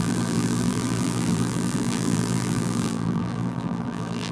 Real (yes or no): no